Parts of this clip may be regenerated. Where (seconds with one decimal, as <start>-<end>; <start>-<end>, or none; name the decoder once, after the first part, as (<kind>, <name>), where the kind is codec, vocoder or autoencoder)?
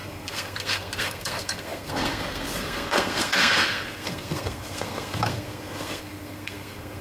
0.0-7.0 (codec, SNAC)